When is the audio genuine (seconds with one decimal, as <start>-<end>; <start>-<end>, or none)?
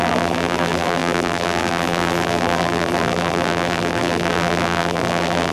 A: none